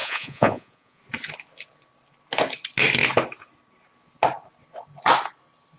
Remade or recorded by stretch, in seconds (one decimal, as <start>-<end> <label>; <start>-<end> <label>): 0.0-1.0 remade; 1.0-5.8 recorded